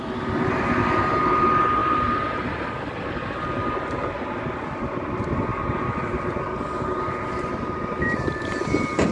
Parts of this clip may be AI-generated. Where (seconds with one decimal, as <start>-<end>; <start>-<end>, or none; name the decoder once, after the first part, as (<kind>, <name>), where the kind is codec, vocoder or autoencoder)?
1.8-3.1 (vocoder, BigVGAN v2); 5.5-9.1